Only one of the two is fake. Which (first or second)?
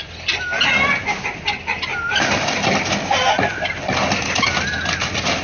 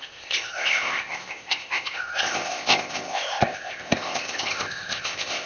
second